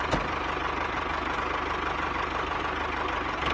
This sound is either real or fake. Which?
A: real